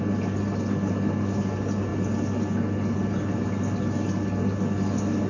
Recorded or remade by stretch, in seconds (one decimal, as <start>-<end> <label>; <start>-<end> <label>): 0.0-5.3 recorded